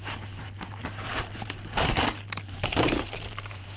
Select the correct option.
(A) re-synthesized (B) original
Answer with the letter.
A